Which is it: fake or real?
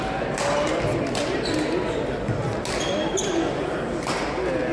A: real